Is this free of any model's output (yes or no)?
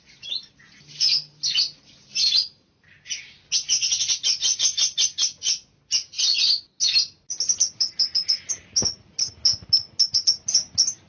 yes